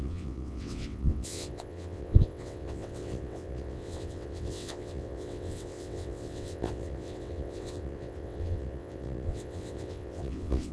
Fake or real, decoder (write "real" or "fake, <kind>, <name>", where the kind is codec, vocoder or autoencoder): fake, vocoder, WaveNeXt